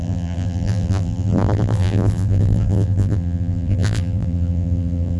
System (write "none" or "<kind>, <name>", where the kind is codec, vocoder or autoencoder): vocoder, BigVGAN v2